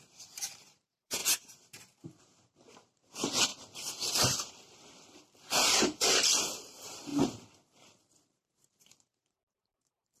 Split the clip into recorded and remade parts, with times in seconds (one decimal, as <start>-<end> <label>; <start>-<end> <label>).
0.0-10.2 remade